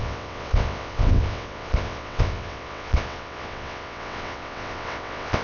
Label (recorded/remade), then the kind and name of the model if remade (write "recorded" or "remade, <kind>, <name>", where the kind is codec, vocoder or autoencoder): remade, vocoder, WaveNeXt